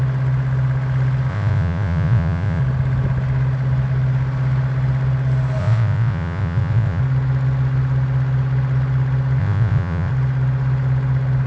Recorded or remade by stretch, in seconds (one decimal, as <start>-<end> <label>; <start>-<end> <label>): 0.0-1.3 recorded; 1.3-2.6 remade; 2.6-5.6 recorded; 5.6-7.0 remade; 7.0-9.4 recorded; 9.4-10.1 remade; 10.1-11.5 recorded